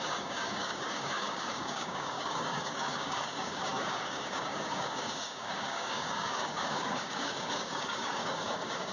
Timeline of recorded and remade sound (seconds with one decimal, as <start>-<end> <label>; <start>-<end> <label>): 0.0-8.9 remade